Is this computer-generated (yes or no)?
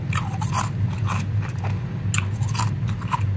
no